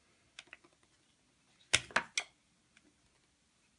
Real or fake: real